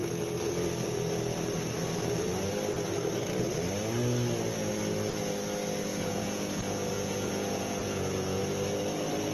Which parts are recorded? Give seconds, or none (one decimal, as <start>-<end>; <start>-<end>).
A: 0.0-5.9; 8.4-9.3